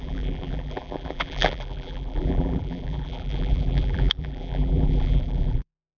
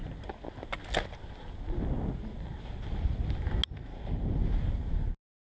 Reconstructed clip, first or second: first